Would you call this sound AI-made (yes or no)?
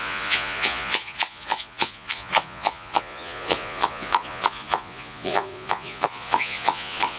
yes